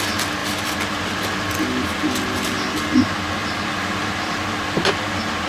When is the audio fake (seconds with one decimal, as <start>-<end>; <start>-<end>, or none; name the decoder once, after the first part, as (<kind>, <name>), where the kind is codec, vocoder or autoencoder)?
0.4-1.3 (vocoder, BigVGAN v2); 3.4-5.0